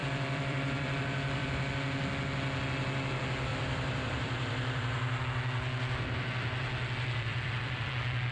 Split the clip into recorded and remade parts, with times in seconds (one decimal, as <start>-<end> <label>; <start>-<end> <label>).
0.0-1.7 remade; 1.7-3.5 recorded; 3.5-5.2 remade; 5.2-7.3 recorded; 7.3-7.9 remade; 7.9-8.3 recorded